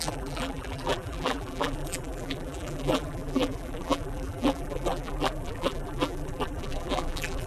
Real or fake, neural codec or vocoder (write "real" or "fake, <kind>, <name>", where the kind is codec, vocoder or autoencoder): fake, vocoder, BigVGAN v2